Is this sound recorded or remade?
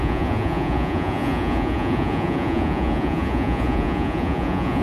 remade